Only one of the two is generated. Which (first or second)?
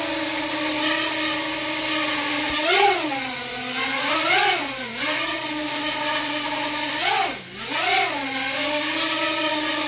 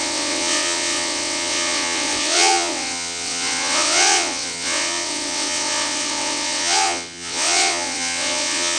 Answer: second